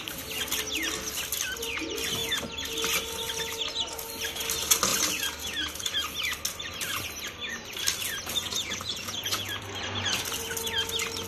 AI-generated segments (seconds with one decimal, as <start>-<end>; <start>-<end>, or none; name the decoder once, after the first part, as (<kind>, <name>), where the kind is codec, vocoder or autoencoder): 8.4-9.6 (vocoder, Vocos)

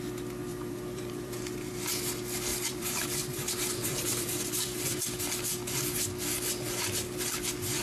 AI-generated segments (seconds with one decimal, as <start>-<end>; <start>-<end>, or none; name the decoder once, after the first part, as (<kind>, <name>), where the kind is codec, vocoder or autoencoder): 0.5-1.7 (vocoder, BigVGAN v2); 2.5-5.0

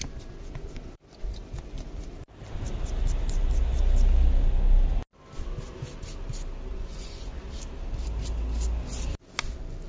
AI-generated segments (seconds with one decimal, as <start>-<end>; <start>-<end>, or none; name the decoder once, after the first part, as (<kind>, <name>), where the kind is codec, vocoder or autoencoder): 6.7-7.4 (vocoder, Vocos)

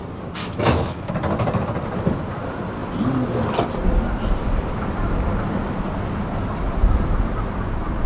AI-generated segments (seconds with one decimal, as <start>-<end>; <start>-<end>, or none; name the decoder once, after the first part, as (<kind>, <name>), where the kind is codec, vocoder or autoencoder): 0.4-1.1 (autoencoder, DAC-VAE)